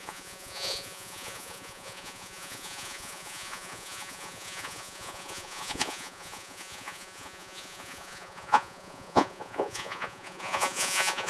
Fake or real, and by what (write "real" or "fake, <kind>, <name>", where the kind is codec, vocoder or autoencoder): fake, vocoder, Vocos